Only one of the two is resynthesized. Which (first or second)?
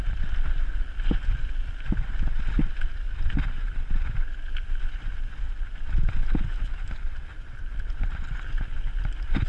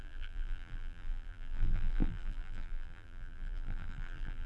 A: second